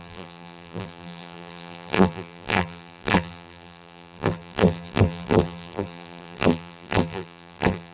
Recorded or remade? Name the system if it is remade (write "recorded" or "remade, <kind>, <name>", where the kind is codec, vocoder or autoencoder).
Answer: remade, vocoder, BigVGAN v2